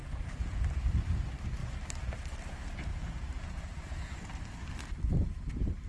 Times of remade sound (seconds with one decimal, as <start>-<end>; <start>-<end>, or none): 0.0-0.6; 2.9-4.3

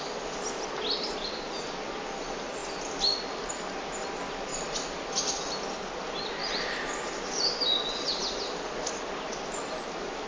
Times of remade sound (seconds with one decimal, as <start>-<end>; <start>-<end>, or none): none

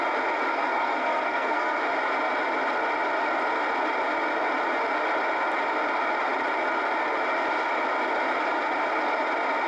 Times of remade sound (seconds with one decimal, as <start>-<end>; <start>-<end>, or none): 0.5-1.8

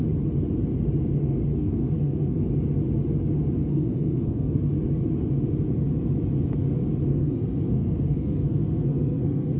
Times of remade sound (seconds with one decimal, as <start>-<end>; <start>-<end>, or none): 1.2-2.4; 3.7-4.6; 7.1-9.6

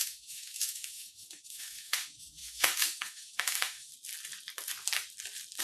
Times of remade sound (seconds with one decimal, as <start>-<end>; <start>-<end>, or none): 0.0-3.9

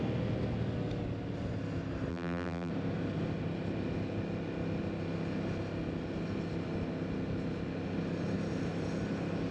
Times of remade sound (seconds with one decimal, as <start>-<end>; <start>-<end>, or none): 2.1-2.7

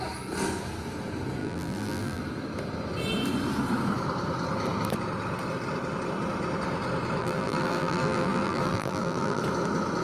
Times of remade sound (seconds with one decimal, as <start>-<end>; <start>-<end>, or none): 1.4-2.2; 7.2-9.4